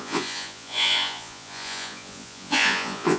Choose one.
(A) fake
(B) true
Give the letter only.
A